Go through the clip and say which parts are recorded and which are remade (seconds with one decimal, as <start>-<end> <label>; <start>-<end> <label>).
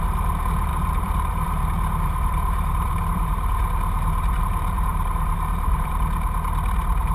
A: 0.0-0.7 recorded; 0.7-4.4 remade; 4.4-4.9 recorded; 4.9-5.9 remade; 5.9-7.1 recorded